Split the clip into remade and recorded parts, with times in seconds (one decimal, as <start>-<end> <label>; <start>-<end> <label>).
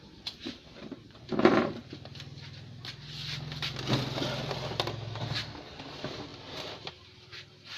0.0-1.8 remade; 1.8-5.7 recorded; 5.7-7.8 remade